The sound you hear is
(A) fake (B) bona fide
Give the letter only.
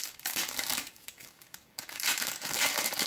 A